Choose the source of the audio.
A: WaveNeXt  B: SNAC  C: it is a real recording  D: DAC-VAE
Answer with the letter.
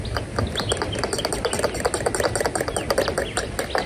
C